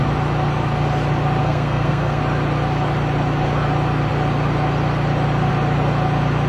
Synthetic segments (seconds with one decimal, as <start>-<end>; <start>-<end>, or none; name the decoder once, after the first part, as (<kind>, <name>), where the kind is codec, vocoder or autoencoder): 1.4-2.2 (codec, SNAC)

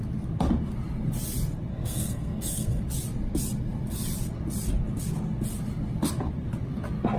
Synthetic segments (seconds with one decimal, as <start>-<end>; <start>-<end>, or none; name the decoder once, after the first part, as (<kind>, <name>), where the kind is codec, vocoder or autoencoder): 1.7-2.8 (codec, SNAC)

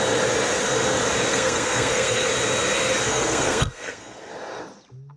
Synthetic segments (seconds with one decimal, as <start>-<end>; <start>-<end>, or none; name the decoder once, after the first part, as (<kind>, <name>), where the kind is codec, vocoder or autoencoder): 1.3-2.3 (codec, SNAC); 3.1-4.3

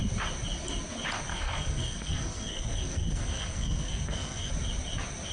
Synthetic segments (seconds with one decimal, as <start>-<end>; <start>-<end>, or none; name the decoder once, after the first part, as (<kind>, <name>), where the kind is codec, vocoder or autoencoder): 1.3-4.5 (codec, SNAC)

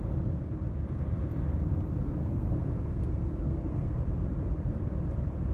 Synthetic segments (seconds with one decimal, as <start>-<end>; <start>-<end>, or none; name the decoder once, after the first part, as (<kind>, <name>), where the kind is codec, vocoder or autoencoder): 2.2-4.0 (codec, SNAC)

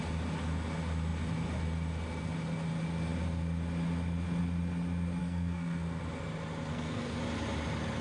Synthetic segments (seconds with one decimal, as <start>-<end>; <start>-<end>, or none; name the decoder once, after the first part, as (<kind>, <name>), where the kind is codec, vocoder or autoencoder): 5.2-6.0 (codec, SNAC); 6.7-7.2

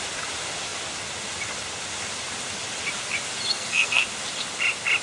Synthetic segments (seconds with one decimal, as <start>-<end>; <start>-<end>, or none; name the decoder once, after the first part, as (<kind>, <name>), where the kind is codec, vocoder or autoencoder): 3.5-4.0 (codec, SNAC)

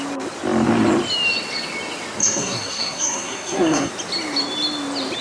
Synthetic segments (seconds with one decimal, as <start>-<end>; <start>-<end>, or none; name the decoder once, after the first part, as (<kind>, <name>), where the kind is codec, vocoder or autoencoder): 2.2-3.9 (codec, SNAC)